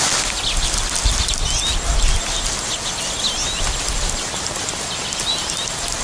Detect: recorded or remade recorded